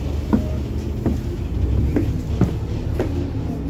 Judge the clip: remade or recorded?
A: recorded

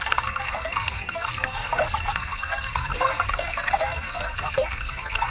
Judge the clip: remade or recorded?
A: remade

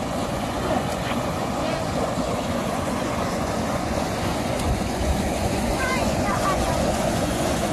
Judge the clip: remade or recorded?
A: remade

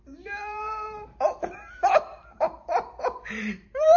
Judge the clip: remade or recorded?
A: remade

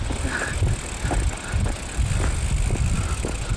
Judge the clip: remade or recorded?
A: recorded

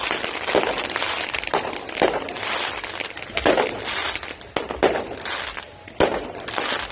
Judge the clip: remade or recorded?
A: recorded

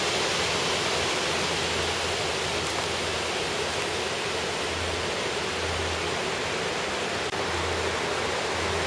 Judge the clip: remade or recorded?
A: recorded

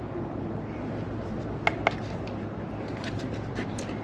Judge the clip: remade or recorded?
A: recorded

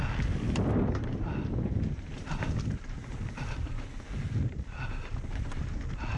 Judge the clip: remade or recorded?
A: recorded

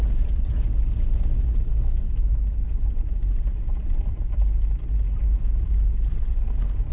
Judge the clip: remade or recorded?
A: recorded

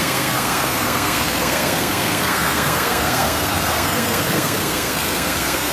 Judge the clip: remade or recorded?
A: remade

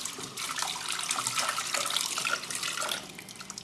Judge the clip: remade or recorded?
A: recorded